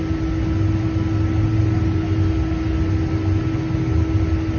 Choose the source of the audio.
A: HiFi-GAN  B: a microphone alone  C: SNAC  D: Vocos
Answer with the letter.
B